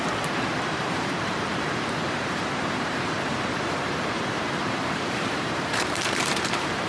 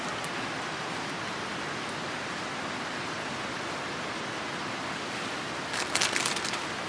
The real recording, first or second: second